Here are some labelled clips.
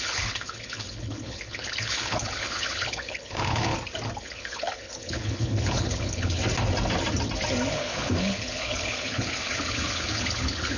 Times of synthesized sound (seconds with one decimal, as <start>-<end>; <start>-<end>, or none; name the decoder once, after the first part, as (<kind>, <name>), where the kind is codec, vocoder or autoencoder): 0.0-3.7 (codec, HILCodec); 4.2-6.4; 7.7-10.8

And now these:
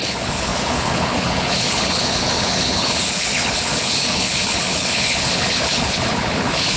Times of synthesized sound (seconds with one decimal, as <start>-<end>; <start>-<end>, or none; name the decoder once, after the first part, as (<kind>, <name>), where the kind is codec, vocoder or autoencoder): 0.0-6.8 (codec, HILCodec)

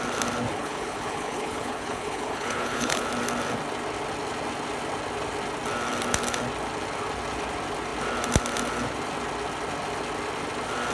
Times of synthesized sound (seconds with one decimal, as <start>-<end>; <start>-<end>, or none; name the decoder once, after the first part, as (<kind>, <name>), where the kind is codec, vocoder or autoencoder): 0.5-3.0 (codec, HILCodec)